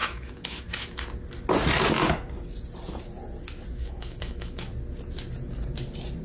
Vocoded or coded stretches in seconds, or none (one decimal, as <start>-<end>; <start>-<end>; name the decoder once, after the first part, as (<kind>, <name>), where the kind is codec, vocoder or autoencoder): 0.0-1.0 (autoencoder, DAC-VAE); 3.8-4.7

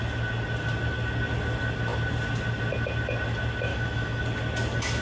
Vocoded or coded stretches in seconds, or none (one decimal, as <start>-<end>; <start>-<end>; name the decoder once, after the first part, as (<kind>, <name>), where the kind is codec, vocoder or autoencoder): 3.7-4.2 (autoencoder, DAC-VAE)

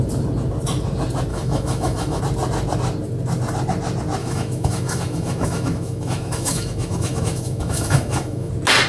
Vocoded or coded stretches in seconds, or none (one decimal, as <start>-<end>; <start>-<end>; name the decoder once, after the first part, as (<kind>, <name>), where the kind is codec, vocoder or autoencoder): 1.3-2.2 (autoencoder, DAC-VAE); 4.2-8.5

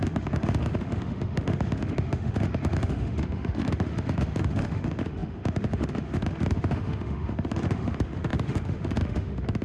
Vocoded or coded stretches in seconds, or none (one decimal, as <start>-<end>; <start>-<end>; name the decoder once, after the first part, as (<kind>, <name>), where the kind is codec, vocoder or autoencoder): 0.0-9.6 (autoencoder, DAC-VAE)

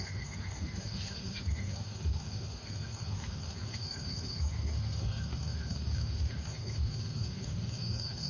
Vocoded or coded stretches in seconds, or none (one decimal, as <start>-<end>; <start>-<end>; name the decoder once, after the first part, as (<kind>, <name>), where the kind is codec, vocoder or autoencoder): 0.0-8.3 (autoencoder, DAC-VAE)

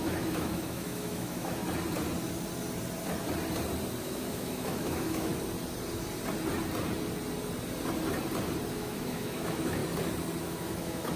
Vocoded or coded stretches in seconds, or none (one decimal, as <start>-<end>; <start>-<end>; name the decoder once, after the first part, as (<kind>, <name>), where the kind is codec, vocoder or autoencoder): 0.0-1.6 (autoencoder, DAC-VAE); 4.0-5.3; 8.7-9.8; 10.4-11.2

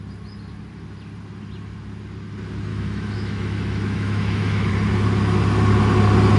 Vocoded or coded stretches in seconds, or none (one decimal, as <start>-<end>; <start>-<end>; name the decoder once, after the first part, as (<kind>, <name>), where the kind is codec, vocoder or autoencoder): 2.7-4.7 (autoencoder, DAC-VAE)

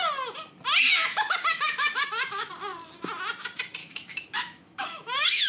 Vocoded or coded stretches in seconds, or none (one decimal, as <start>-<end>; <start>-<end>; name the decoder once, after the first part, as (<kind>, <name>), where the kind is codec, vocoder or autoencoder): 0.9-2.5 (autoencoder, DAC-VAE); 3.8-5.5